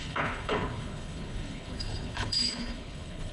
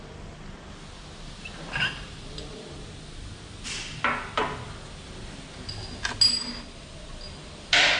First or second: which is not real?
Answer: first